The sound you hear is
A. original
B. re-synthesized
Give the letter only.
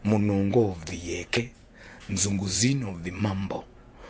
B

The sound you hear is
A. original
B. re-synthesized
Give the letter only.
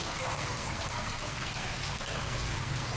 B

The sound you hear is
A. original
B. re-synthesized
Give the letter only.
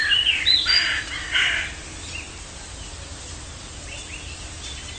A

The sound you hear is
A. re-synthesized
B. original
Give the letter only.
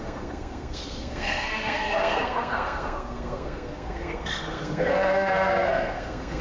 A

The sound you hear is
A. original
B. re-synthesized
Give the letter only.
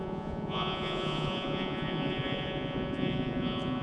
B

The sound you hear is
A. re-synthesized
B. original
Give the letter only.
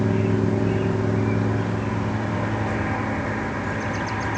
B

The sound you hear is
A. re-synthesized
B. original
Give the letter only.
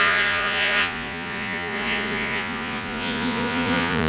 A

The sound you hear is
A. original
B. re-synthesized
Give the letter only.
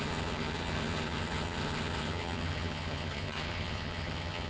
B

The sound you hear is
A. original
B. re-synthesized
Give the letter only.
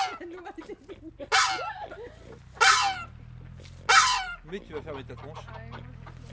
A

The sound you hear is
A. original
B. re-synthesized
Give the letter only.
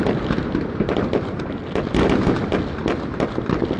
A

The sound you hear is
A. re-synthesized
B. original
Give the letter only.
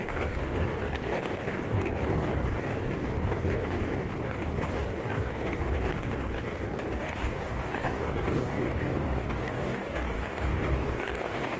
A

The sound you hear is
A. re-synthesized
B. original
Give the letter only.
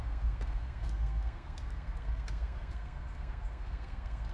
A